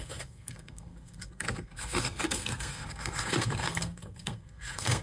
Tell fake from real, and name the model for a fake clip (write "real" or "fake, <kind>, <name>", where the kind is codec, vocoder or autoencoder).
fake, codec, SNAC